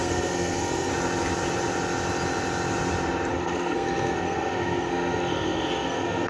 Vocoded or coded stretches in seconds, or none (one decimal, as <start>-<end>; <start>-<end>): 0.0-0.9; 3.3-6.3